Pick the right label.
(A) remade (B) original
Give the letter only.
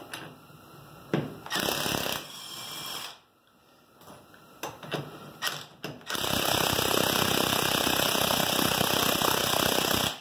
B